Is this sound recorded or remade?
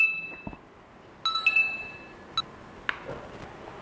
recorded